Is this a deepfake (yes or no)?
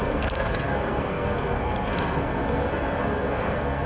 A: yes